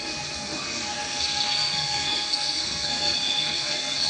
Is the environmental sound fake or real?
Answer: fake